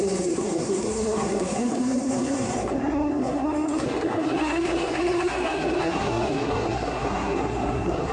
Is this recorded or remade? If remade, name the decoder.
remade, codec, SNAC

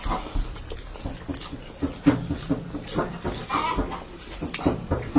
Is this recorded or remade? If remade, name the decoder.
recorded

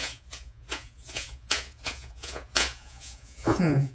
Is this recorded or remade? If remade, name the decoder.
remade, vocoder, Vocos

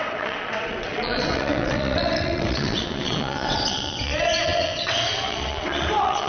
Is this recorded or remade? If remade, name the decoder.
remade, vocoder, WaveNeXt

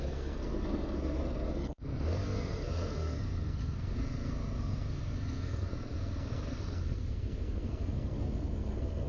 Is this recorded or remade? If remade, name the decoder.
remade, codec, SNAC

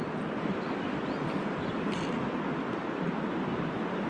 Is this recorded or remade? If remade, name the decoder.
recorded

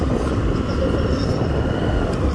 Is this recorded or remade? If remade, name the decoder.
recorded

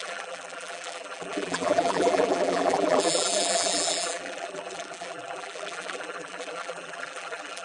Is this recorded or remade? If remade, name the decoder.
remade, vocoder, BigVGAN v2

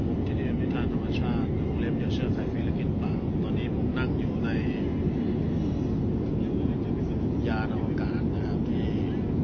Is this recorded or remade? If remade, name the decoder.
recorded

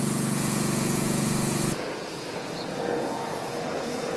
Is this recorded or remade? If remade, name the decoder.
remade, vocoder, Vocos